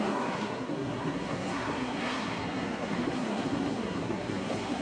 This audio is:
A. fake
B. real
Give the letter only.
A